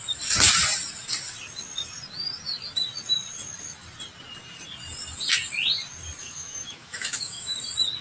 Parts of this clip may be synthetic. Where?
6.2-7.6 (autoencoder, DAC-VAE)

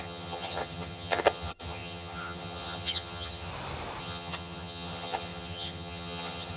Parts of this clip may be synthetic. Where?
0.0-3.5 (vocoder, HiFi-GAN); 4.0-6.6

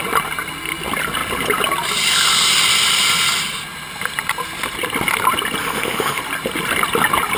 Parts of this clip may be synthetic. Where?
5.6-6.2 (autoencoder, DAC-VAE)

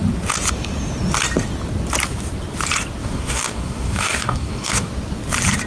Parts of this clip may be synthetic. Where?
3.0-4.9 (codec, DAC)